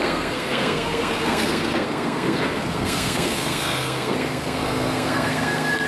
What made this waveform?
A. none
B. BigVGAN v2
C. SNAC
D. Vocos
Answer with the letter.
C